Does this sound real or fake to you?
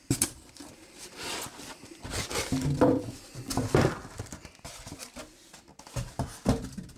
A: fake